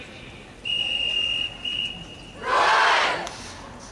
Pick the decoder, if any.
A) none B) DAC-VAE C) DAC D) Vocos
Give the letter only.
A